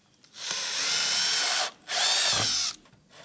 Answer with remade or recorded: recorded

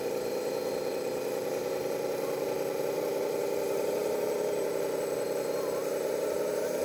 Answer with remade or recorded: remade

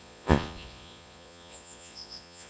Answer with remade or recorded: remade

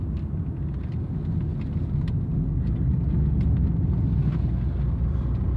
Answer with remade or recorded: recorded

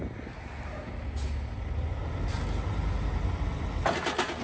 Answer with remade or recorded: recorded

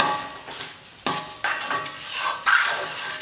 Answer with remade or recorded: recorded